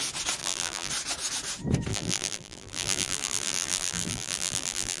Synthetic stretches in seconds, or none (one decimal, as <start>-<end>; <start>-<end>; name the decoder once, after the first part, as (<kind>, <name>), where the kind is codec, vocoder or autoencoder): 0.4-0.9 (vocoder, BigVGAN v2); 1.9-5.0